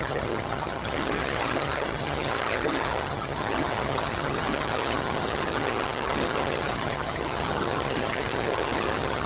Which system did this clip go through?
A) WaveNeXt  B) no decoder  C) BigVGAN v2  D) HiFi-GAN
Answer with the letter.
D